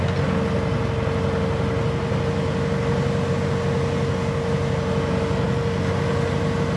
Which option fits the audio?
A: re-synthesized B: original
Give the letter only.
B